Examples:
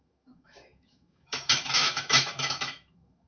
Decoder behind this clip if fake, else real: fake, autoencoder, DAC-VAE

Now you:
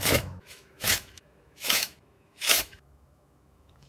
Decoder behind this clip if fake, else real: fake, autoencoder, DAC-VAE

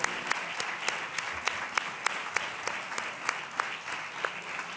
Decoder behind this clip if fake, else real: real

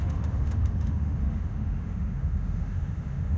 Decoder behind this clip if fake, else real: fake, autoencoder, DAC-VAE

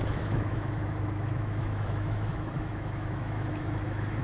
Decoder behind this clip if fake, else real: fake, autoencoder, DAC-VAE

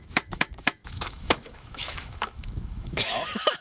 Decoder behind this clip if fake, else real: fake, autoencoder, DAC-VAE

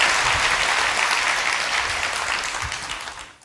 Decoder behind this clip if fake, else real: real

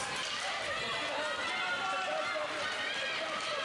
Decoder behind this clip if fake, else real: real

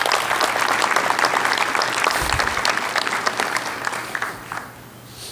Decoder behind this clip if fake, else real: real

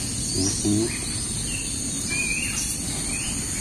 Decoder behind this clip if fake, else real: real